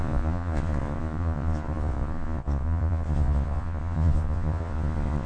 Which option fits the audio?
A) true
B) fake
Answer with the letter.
B